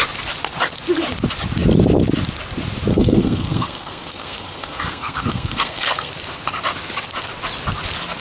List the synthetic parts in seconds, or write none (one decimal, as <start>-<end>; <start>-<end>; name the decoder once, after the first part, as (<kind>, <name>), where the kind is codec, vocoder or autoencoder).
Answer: 2.9-6.1 (codec, SNAC)